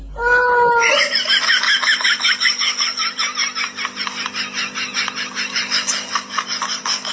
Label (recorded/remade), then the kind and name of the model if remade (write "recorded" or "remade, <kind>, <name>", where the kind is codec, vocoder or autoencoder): recorded